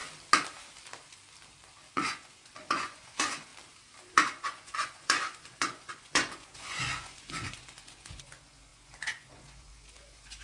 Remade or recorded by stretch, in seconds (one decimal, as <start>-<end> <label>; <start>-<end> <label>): 0.0-1.9 recorded; 1.9-3.5 remade; 3.5-4.1 recorded; 4.1-10.4 remade